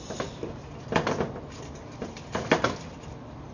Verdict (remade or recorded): recorded